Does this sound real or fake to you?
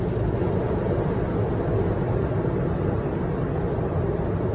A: real